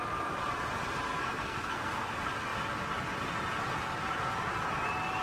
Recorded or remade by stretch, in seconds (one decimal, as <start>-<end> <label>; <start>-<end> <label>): 0.0-1.1 recorded; 1.1-2.1 remade; 2.1-5.2 recorded